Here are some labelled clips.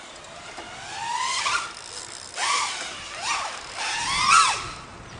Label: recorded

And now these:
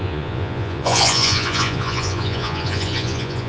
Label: remade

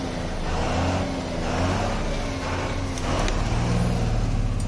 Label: recorded